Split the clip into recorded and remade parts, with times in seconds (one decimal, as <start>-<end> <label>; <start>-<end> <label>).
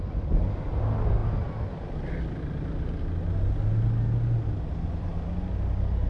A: 0.0-6.1 recorded